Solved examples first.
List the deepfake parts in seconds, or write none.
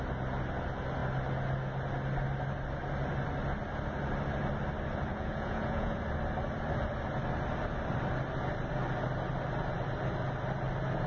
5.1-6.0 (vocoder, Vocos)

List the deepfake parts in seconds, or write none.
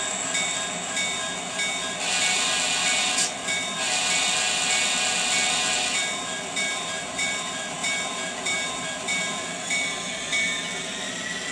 none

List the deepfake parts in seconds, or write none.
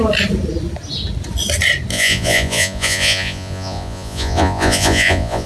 1.9-5.5 (vocoder, Vocos)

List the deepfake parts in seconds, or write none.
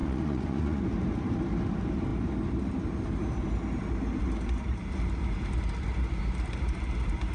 0.0-0.8 (vocoder, Vocos)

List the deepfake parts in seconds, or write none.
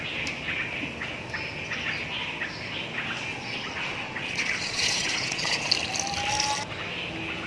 3.3-5.7 (vocoder, Vocos)